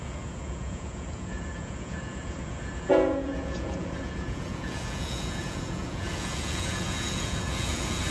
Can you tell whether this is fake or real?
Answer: fake